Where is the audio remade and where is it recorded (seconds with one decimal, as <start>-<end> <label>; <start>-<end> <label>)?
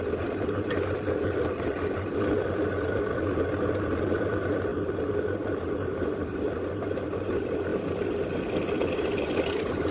0.0-9.9 recorded